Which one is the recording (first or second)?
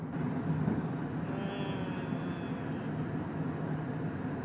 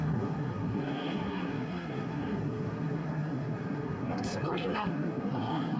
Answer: first